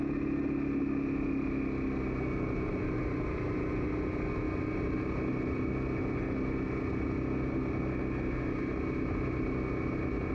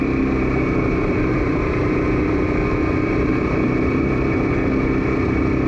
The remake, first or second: second